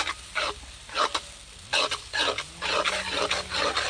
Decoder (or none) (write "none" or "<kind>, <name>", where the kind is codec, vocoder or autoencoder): none